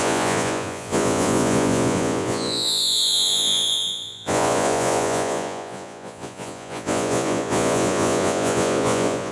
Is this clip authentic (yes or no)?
no